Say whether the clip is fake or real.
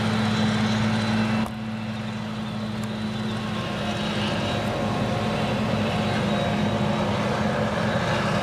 real